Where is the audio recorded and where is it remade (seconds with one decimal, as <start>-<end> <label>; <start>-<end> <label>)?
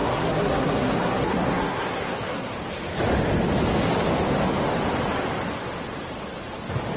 0.0-2.5 remade; 2.5-7.0 recorded